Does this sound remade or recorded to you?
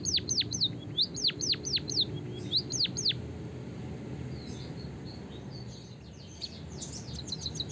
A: recorded